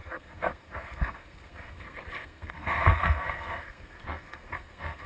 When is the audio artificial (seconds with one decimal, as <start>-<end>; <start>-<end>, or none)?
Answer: 0.0-5.1